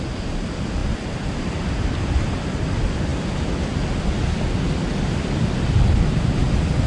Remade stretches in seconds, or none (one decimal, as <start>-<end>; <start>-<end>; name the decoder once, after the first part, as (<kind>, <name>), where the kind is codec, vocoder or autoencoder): none